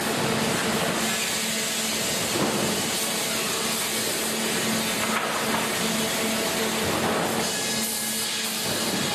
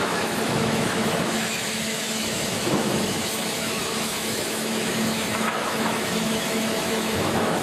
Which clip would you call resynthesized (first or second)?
second